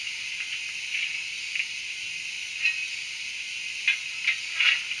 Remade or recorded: recorded